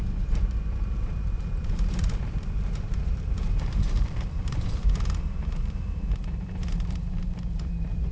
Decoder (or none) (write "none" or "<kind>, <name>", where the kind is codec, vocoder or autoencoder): vocoder, BigVGAN v2